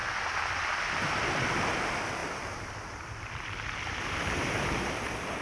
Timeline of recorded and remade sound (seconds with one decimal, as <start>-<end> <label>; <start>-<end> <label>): 0.0-2.2 recorded; 2.2-5.4 remade

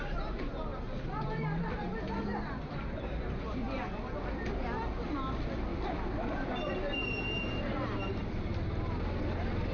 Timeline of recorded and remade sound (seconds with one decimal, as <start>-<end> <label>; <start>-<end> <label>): 0.0-0.7 recorded; 0.7-1.6 remade; 1.6-5.7 recorded; 5.7-6.7 remade; 6.7-9.7 recorded

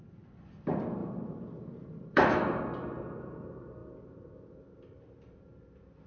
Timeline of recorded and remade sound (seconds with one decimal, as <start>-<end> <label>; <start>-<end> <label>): 0.0-1.0 recorded; 1.0-2.6 remade; 2.6-6.1 recorded

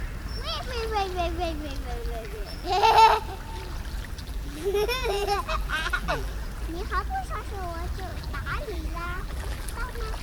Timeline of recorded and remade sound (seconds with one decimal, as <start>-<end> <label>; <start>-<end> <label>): 0.0-2.0 recorded; 2.0-2.7 remade; 2.7-4.2 recorded; 4.2-6.3 remade; 6.3-8.1 recorded; 8.1-9.7 remade; 9.7-10.2 recorded